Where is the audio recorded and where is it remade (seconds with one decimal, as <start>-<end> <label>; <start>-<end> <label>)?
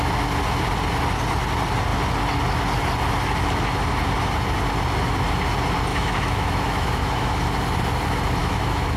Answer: 0.0-5.9 recorded; 5.9-7.4 remade; 7.4-8.4 recorded; 8.4-9.0 remade